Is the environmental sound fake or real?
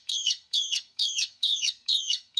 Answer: fake